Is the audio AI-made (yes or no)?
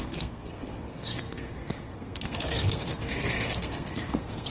yes